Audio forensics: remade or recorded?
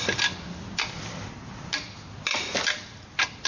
recorded